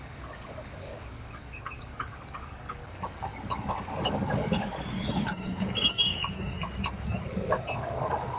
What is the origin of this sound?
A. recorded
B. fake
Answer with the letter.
B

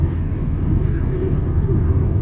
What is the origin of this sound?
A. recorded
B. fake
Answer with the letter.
B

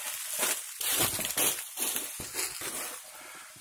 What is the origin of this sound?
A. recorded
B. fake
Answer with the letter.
A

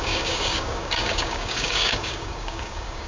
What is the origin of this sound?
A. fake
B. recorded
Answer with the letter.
A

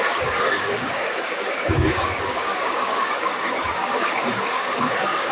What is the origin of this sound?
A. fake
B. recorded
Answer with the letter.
A